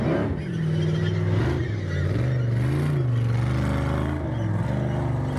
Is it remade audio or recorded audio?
recorded